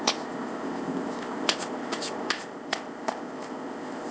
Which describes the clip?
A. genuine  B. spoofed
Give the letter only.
B